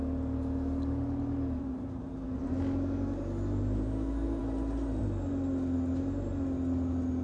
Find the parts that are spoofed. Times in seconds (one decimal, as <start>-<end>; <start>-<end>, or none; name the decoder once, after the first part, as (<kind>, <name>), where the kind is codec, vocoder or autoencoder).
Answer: none